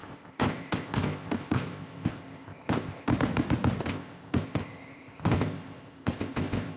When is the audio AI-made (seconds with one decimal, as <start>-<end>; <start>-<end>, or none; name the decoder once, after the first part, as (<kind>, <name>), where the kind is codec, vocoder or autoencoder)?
0.0-3.1 (codec, ZipCodec); 3.8-6.8